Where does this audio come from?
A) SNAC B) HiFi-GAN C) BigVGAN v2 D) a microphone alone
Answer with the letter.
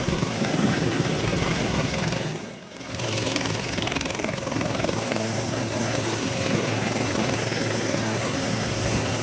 A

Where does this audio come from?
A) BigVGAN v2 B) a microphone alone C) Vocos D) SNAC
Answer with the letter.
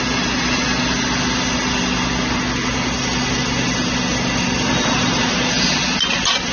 B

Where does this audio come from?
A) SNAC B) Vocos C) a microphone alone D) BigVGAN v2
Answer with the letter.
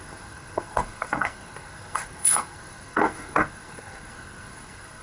A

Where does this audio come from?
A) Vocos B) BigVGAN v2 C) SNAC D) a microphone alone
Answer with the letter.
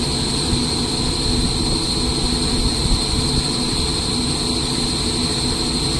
D